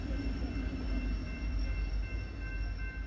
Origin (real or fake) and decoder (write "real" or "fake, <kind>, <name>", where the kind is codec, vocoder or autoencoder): real